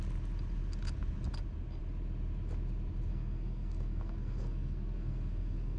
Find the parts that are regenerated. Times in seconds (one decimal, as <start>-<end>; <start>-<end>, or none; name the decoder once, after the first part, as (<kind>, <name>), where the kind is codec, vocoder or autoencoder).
3.1-5.8 (codec, SNAC)